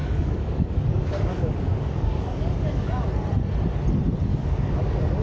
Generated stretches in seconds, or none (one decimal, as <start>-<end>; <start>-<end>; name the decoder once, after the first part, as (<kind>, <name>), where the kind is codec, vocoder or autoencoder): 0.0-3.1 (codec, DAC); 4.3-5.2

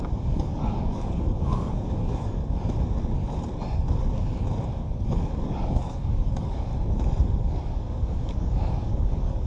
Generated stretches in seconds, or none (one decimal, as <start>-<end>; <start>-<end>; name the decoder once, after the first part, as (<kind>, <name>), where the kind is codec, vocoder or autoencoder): 0.0-2.4 (codec, DAC); 4.8-6.7; 7.3-9.5

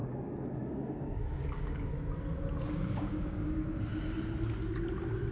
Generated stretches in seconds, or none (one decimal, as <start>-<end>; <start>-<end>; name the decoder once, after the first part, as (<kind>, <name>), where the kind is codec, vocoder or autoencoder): 0.0-1.9 (codec, DAC); 2.7-3.9

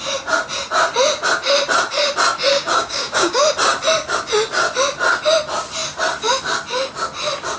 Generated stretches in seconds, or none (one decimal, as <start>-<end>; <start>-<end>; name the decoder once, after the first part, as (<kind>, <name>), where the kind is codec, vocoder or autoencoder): 2.5-3.4 (codec, DAC)

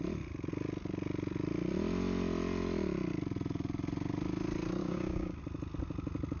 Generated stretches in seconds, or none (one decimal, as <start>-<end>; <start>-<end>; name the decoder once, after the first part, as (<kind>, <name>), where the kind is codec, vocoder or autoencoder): 4.8-5.4 (codec, DAC)